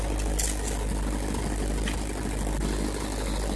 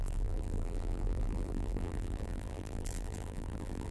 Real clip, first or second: first